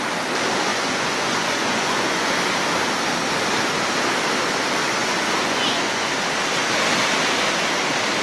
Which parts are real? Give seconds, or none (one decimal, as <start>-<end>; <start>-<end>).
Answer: 0.0-0.7; 2.4-5.0; 6.1-8.2